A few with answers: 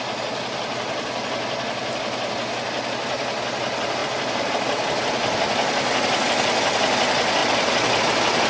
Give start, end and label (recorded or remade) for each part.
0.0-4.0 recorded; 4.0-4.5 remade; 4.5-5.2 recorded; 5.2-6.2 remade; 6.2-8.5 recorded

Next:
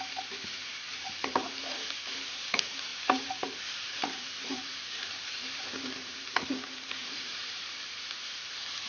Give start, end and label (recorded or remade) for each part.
0.0-0.7 recorded; 0.7-1.3 remade; 1.3-2.9 recorded; 2.9-6.5 remade; 6.5-7.0 recorded; 7.0-8.0 remade; 8.0-8.9 recorded

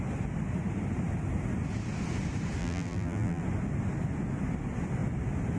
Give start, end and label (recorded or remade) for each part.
0.0-2.6 recorded; 2.6-3.4 remade; 3.4-5.6 recorded

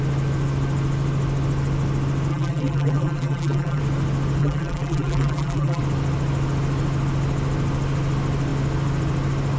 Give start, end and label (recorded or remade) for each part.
0.0-2.3 recorded; 2.3-3.8 remade; 3.8-4.4 recorded; 4.4-5.8 remade; 5.8-9.6 recorded

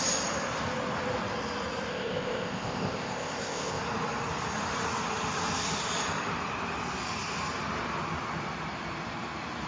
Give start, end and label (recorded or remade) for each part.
0.0-1.9 recorded; 1.9-3.8 remade; 3.8-9.7 recorded

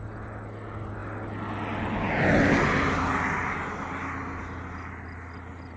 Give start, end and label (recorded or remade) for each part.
0.0-5.8 recorded